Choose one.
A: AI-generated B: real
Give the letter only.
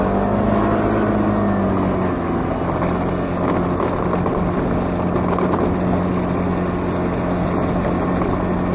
B